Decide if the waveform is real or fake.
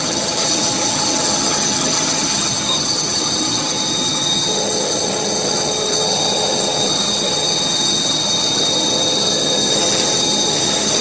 fake